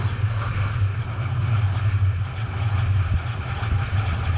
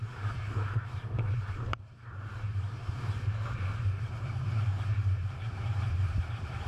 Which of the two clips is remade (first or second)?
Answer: second